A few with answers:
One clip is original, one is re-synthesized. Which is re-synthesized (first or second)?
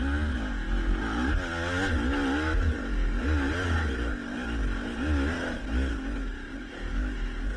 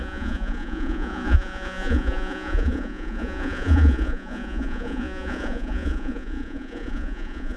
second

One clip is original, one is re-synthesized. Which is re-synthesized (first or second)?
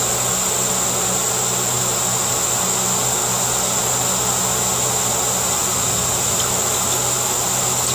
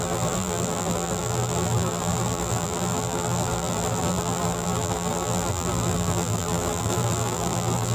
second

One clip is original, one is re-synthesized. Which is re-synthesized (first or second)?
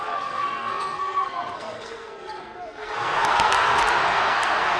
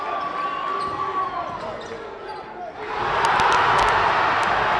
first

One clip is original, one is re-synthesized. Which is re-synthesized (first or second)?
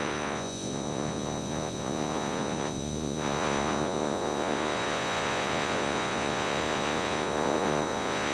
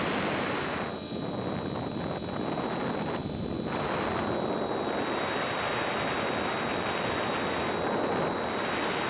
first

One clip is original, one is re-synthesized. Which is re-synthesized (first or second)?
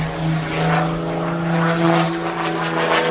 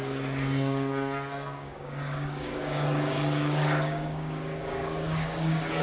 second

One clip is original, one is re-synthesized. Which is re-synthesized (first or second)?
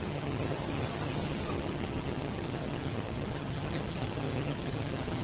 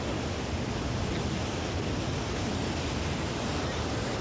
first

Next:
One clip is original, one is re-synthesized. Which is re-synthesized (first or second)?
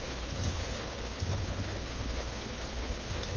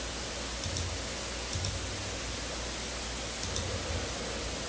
first